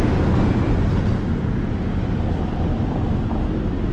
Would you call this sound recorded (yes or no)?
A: yes